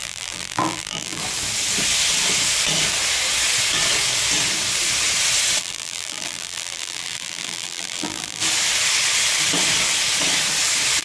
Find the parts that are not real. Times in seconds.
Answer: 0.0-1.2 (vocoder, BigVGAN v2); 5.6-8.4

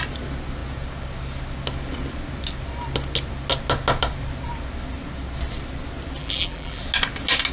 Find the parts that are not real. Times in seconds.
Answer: 6.2-6.8 (vocoder, BigVGAN v2)